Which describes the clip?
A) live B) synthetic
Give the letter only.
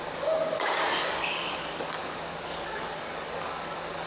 B